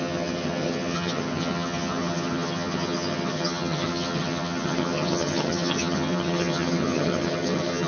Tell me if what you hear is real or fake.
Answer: fake